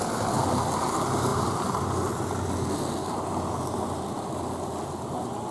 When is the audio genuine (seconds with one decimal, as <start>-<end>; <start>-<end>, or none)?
0.0-1.3; 1.8-5.5